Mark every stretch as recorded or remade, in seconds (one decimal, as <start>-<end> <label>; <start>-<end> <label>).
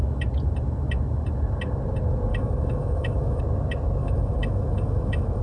0.0-2.3 recorded; 2.3-3.4 remade; 3.4-4.0 recorded; 4.0-5.4 remade